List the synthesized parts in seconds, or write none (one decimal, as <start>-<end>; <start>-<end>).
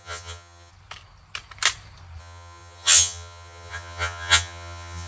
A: 0.0-0.7; 2.2-5.1